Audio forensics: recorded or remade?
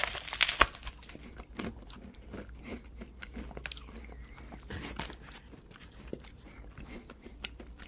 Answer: recorded